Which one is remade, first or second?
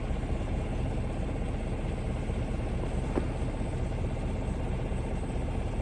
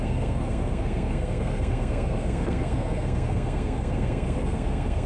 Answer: second